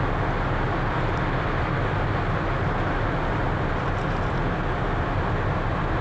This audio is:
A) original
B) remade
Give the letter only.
A